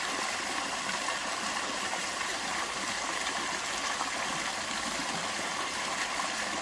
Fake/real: real